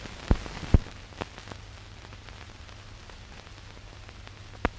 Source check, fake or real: real